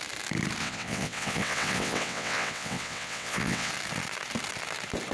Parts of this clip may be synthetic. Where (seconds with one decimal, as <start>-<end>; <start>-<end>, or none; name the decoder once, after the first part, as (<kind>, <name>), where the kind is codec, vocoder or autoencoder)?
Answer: 0.6-3.7 (vocoder, WaveNeXt)